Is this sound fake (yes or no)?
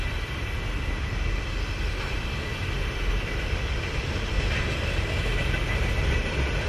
no